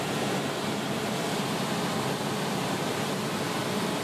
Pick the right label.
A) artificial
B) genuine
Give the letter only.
B